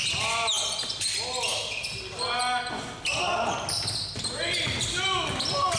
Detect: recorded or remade recorded